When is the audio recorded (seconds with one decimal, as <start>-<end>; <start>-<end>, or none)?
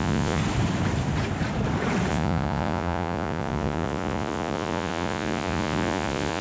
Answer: 0.4-2.1